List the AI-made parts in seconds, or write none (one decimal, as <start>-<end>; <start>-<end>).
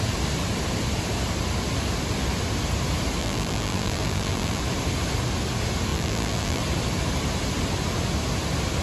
3.2-4.6; 5.9-6.6